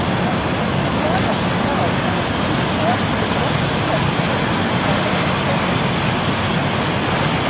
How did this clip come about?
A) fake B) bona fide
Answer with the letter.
B